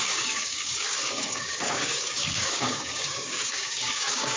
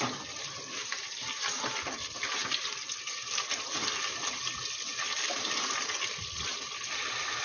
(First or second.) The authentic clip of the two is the second